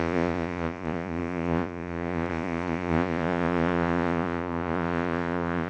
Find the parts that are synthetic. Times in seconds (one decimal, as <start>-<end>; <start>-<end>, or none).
0.0-5.7